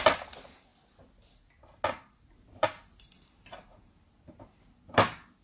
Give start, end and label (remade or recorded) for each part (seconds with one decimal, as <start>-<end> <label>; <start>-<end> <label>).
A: 0.0-5.4 recorded